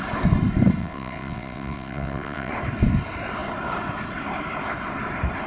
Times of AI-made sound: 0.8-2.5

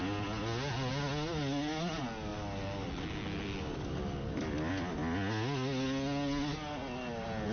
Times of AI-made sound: none

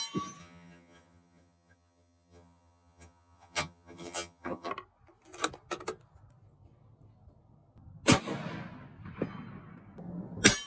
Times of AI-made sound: 0.4-4.7

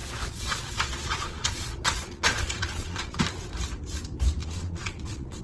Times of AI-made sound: 0.0-3.2; 4.4-5.4

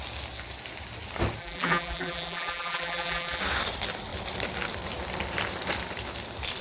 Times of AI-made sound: 1.4-3.4

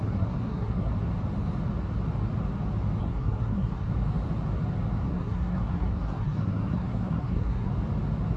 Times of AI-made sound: 0.0-0.9; 3.0-3.9; 5.1-7.7

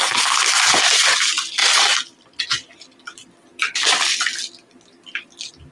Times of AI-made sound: 1.6-2.3

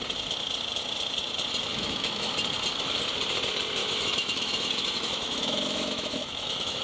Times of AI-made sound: 1.7-2.3; 3.8-6.8